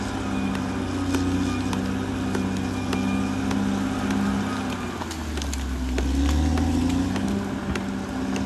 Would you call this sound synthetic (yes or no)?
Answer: no